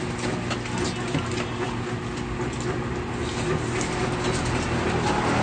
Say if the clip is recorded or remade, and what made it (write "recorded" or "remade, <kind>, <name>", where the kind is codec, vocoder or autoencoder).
recorded